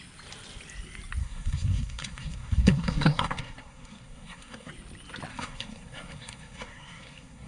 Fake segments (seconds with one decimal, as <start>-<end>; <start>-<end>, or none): 1.2-4.7; 5.3-7.5